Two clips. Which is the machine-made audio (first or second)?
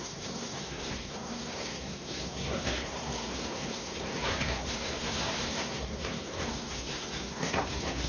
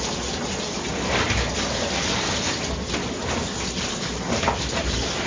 first